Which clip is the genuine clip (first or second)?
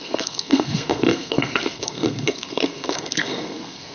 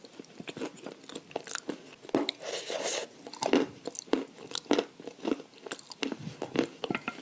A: second